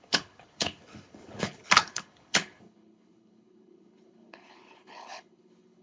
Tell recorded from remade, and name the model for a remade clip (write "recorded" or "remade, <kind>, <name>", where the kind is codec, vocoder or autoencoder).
remade, codec, HILCodec